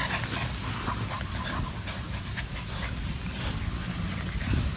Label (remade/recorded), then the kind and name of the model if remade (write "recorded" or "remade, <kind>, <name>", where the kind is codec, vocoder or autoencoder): recorded